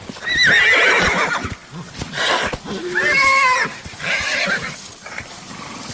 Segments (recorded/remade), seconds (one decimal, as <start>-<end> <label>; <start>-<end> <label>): 0.0-5.9 recorded